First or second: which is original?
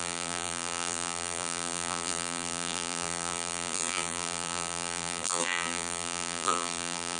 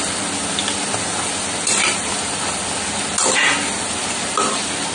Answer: second